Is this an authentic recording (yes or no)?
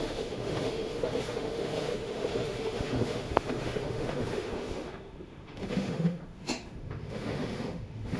no